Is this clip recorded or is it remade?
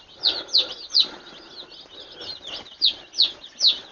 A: recorded